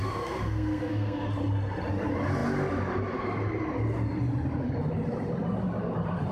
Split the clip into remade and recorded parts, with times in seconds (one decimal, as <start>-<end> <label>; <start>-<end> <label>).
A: 0.0-1.3 remade; 1.3-6.3 recorded